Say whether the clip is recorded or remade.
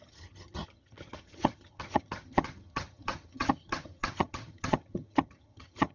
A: remade